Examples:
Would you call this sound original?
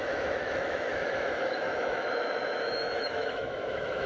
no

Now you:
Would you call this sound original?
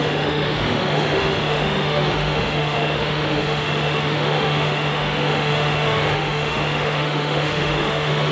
no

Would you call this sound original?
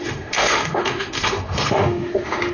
no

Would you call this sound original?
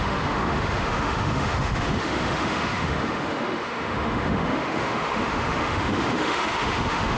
no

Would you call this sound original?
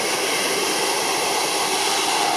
yes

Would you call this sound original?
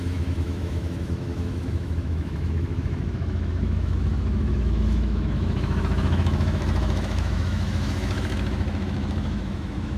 no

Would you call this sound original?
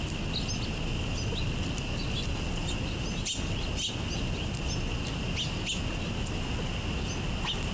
yes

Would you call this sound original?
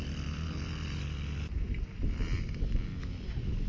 yes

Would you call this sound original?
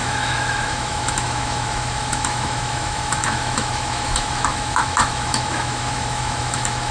no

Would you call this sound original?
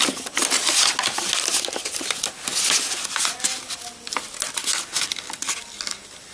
yes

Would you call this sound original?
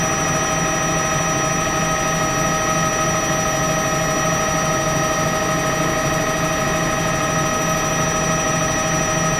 yes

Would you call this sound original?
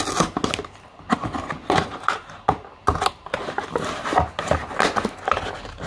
yes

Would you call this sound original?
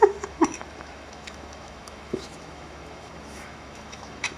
no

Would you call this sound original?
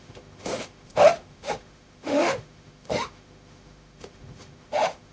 no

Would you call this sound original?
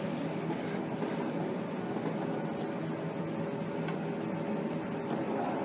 yes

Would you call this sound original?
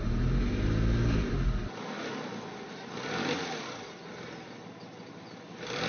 yes